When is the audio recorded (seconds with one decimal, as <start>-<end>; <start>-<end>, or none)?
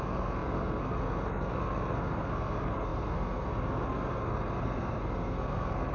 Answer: none